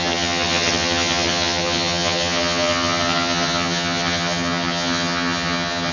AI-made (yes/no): yes